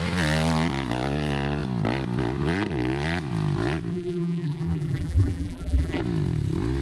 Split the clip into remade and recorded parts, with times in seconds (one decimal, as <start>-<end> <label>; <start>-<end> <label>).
0.0-3.9 recorded; 3.9-6.0 remade; 6.0-6.8 recorded